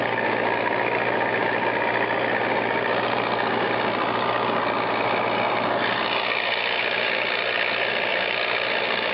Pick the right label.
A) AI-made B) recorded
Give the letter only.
B